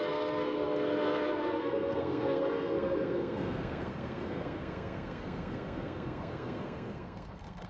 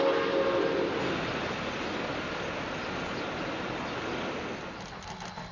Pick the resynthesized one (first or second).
first